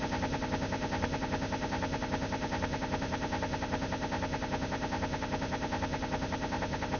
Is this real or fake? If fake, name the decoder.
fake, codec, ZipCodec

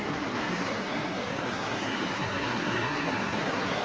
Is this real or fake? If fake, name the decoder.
fake, codec, SNAC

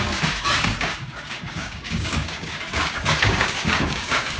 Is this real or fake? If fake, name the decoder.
fake, codec, DAC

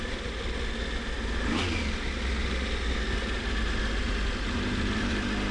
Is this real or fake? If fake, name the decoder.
real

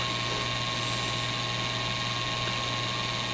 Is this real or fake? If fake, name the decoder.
real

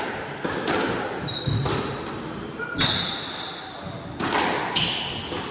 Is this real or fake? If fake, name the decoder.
real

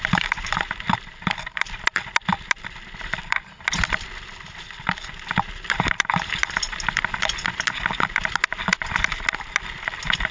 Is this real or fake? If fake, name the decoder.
real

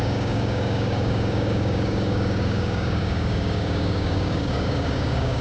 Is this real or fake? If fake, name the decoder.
fake, codec, DAC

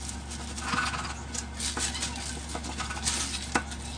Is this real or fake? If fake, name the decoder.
real